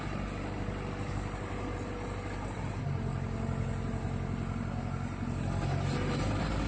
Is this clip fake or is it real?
real